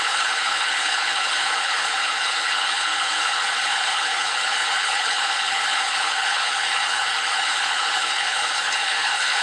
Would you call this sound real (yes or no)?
no